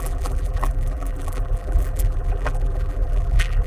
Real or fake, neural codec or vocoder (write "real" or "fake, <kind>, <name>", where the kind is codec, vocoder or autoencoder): fake, vocoder, BigVGAN v2